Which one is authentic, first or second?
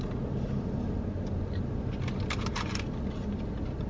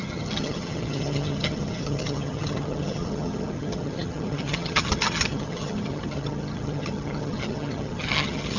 first